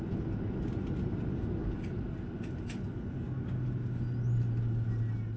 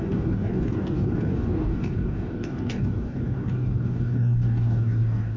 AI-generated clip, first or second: second